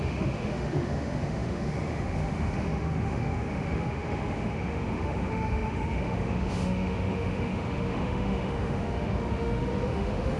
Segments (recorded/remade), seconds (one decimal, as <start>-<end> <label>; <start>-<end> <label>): 0.0-10.4 remade